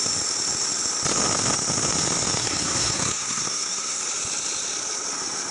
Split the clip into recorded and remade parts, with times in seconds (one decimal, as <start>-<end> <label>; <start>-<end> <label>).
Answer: 0.0-2.4 recorded; 2.4-4.0 remade; 4.0-5.5 recorded